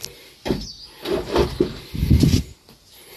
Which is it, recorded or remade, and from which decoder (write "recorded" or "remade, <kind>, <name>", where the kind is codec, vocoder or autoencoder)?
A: recorded